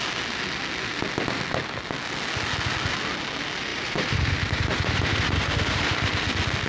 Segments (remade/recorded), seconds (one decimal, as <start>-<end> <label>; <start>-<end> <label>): 0.0-3.7 recorded; 3.7-6.1 remade; 6.1-6.7 recorded